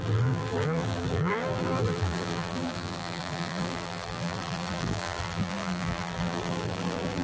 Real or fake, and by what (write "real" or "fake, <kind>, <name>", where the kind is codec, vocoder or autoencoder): fake, vocoder, BigVGAN v2